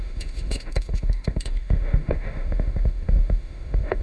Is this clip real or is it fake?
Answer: fake